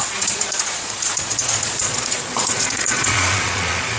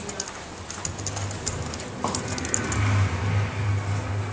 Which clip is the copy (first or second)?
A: first